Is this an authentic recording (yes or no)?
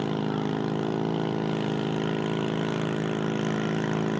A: yes